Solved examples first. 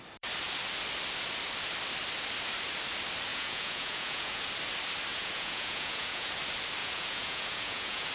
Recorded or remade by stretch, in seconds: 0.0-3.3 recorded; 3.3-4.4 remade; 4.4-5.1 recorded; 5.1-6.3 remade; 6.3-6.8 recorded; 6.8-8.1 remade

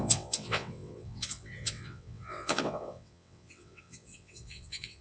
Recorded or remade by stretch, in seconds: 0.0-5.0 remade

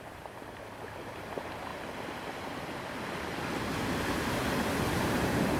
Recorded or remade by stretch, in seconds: 0.0-1.7 remade; 1.7-5.1 recorded; 5.1-5.6 remade